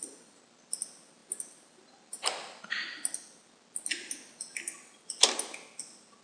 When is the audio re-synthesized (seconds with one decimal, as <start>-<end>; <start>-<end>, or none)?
none